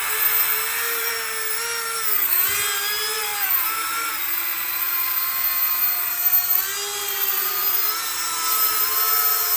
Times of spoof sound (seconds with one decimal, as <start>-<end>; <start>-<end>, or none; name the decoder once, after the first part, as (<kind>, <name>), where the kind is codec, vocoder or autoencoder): 0.5-1.1 (vocoder, BigVGAN v2); 3.3-5.2